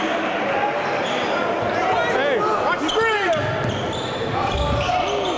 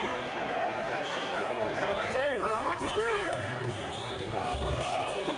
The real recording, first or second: first